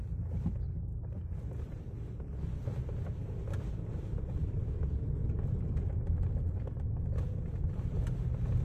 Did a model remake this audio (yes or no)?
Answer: no